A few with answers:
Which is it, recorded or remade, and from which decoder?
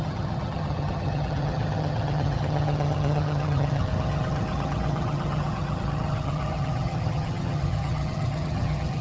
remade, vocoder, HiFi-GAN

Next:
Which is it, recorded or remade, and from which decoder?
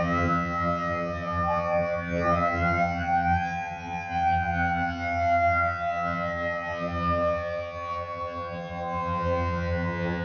remade, vocoder, HiFi-GAN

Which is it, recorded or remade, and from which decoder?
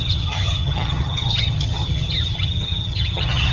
remade, vocoder, HiFi-GAN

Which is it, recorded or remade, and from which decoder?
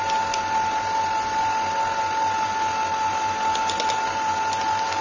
recorded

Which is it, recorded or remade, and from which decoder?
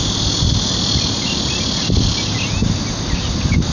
recorded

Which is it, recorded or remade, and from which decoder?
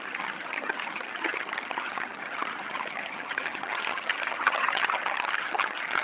remade, vocoder, HiFi-GAN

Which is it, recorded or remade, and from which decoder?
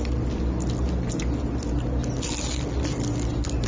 recorded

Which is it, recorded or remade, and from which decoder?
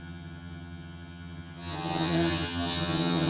remade, vocoder, HiFi-GAN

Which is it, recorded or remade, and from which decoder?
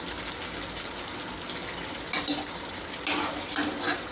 recorded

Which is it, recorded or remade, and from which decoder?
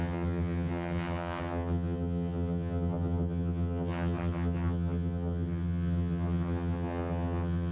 remade, vocoder, HiFi-GAN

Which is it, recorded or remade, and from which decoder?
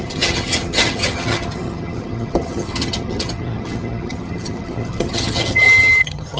remade, vocoder, HiFi-GAN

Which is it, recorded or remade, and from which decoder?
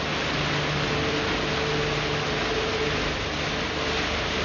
recorded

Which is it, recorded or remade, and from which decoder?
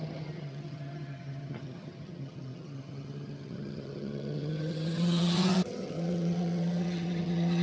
remade, vocoder, HiFi-GAN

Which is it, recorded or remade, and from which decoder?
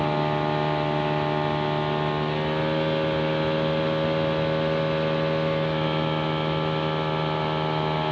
recorded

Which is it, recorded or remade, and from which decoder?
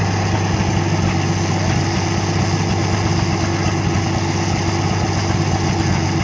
recorded